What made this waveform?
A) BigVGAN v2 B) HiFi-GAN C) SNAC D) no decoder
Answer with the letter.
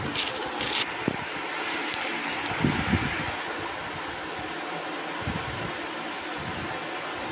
D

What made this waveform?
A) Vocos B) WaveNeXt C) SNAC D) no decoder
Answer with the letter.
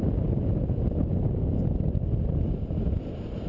D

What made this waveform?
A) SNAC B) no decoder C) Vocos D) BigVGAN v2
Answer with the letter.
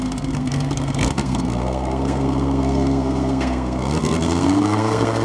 A